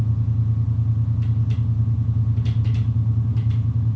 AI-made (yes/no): no